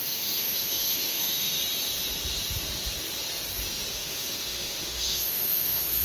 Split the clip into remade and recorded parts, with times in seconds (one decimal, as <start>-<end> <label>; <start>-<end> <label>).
0.0-1.6 remade; 1.6-3.9 recorded; 3.9-6.0 remade